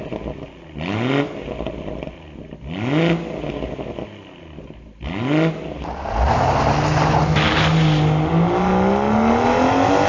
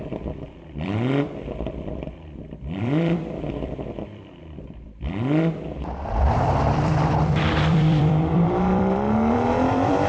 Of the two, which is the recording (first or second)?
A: first